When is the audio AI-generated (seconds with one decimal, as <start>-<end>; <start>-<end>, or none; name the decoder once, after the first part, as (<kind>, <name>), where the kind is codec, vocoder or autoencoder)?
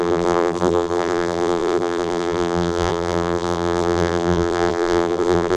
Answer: 0.0-5.6 (vocoder, BigVGAN v2)